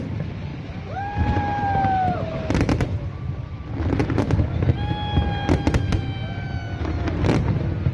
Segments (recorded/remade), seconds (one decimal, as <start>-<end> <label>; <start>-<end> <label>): 0.0-0.5 recorded; 0.5-3.4 remade; 3.4-7.9 recorded